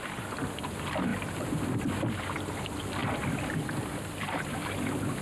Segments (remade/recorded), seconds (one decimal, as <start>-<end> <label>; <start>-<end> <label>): 0.0-5.2 recorded

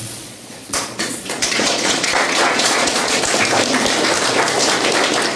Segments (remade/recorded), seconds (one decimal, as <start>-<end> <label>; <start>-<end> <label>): 0.0-3.2 remade; 3.2-5.4 recorded

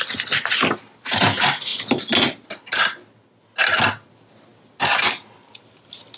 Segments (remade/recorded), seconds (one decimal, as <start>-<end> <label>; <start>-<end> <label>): 0.0-6.2 recorded

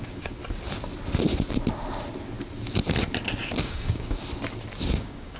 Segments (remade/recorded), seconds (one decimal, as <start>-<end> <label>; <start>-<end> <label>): 0.0-0.4 remade; 0.4-3.6 recorded; 3.6-4.2 remade; 4.2-5.0 recorded; 5.0-5.4 remade

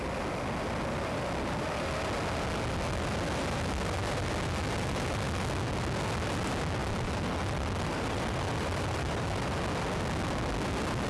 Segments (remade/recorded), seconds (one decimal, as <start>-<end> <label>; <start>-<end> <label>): 0.0-6.8 recorded; 6.8-9.6 remade; 9.6-11.1 recorded